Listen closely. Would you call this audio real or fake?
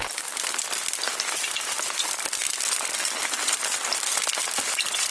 real